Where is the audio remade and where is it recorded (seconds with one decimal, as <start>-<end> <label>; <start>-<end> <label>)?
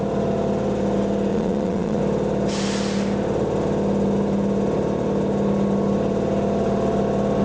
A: 0.0-1.3 recorded; 1.3-2.0 remade; 2.0-7.4 recorded